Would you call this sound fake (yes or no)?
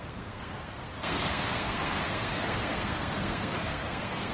yes